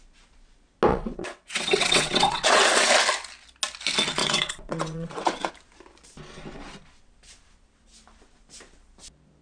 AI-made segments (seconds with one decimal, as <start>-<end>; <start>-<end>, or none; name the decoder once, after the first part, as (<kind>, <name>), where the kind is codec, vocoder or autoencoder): 0.9-2.9 (vocoder, WaveNeXt); 4.2-5.5